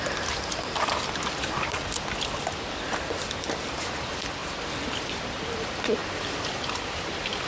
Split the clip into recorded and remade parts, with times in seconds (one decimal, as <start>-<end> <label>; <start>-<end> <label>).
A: 0.0-7.5 remade